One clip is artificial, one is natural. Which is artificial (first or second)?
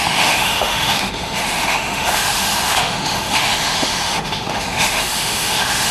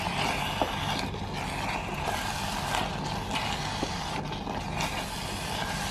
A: first